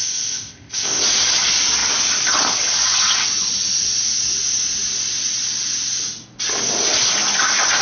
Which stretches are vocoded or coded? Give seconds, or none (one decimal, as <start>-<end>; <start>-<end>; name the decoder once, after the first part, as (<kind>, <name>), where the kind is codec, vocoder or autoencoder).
0.0-1.0 (codec, ZipCodec)